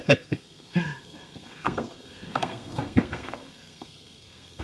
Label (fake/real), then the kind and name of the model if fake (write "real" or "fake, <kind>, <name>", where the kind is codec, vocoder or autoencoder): fake, codec, SNAC